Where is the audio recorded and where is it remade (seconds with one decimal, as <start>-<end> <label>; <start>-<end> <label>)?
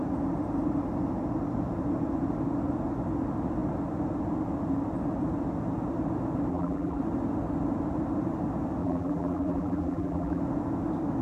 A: 0.0-6.5 recorded; 6.5-7.0 remade; 7.0-8.8 recorded; 8.8-10.4 remade; 10.4-11.2 recorded